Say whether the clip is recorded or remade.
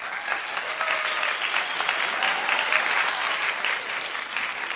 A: recorded